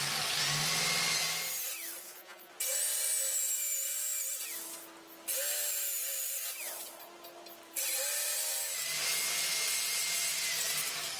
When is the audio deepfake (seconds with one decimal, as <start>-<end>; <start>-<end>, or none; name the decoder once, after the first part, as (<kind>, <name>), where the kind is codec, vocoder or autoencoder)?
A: 2.0-2.5 (vocoder, Vocos)